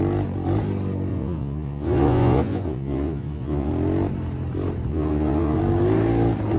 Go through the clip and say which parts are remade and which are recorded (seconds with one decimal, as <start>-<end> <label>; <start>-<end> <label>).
0.0-1.1 recorded; 1.1-3.7 remade; 3.7-4.9 recorded; 4.9-5.6 remade; 5.6-6.6 recorded